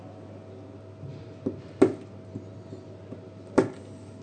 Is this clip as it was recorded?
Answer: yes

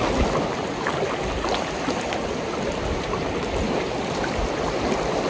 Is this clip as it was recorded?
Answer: yes